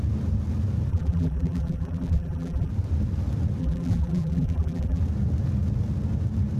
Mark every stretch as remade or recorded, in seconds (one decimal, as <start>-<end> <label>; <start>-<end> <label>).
0.0-0.9 recorded; 0.9-2.7 remade; 2.7-3.6 recorded; 3.6-5.0 remade; 5.0-6.6 recorded

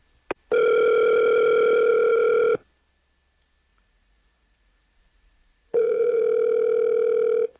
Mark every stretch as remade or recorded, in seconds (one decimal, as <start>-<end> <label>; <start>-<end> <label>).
0.0-3.7 recorded; 3.7-6.2 remade; 6.2-7.6 recorded

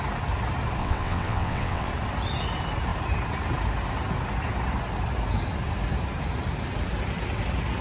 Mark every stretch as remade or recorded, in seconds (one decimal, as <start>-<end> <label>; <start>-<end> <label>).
0.0-0.8 recorded; 0.8-1.9 remade; 1.9-7.8 recorded

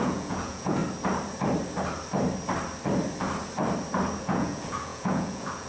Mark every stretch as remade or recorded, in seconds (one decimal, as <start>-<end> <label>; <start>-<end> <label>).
0.0-0.8 remade; 0.8-4.2 recorded; 4.2-5.7 remade

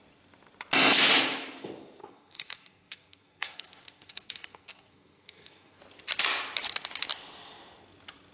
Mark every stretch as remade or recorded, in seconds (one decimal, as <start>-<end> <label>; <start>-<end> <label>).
0.0-2.0 recorded; 2.0-5.8 remade; 5.8-8.3 recorded